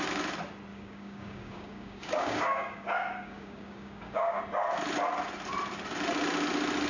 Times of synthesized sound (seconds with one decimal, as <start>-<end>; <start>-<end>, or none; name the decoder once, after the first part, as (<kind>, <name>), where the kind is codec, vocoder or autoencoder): 0.7-4.4 (codec, DAC)